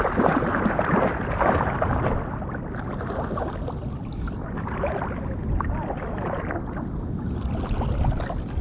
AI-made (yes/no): no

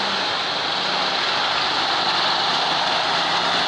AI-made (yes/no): no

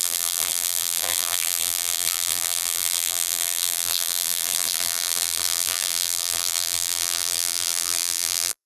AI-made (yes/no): yes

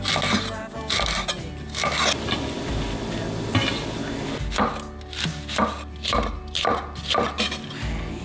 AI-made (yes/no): no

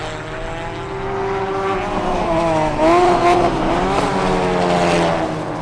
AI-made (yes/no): no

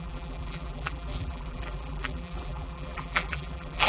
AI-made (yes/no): yes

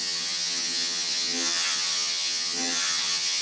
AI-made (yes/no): yes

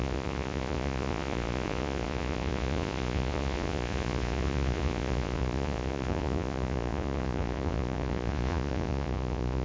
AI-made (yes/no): yes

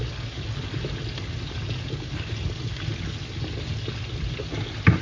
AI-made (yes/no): no